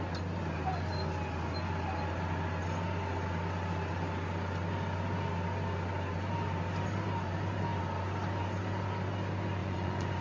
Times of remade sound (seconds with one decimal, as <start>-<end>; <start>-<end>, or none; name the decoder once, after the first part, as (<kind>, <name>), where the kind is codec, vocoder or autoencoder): 9.6-10.2 (vocoder, Vocos)